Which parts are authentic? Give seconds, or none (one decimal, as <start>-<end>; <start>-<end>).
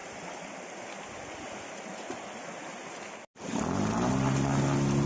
0.0-5.1